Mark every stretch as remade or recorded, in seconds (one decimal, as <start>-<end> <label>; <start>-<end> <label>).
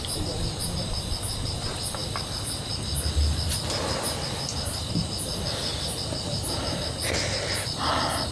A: 0.0-8.3 recorded